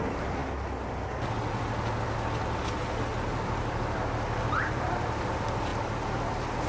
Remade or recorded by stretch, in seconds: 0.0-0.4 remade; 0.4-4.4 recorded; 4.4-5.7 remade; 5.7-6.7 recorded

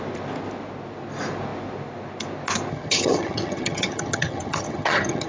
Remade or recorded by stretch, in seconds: 0.0-2.7 recorded; 2.7-5.3 remade

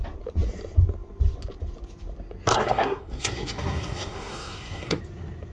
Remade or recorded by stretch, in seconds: 0.0-2.5 recorded; 2.5-5.0 remade; 5.0-5.5 recorded

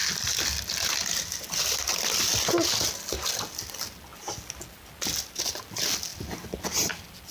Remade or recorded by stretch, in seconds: 0.0-3.3 recorded; 3.3-4.1 remade; 4.1-5.5 recorded; 5.5-7.3 remade

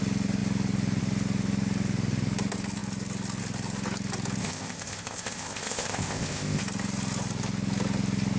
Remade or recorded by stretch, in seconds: 0.0-4.4 recorded; 4.4-6.6 remade; 6.6-8.4 recorded

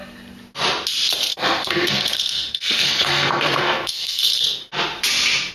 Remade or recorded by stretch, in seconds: 0.0-1.3 recorded; 1.3-4.6 remade; 4.6-5.5 recorded

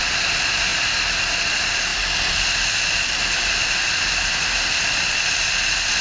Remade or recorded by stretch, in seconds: 0.0-6.0 recorded